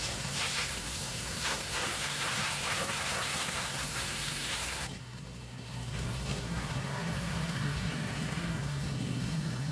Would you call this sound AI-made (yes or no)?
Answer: yes